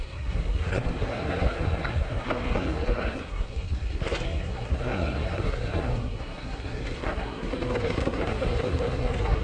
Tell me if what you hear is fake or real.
fake